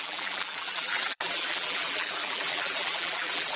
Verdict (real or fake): fake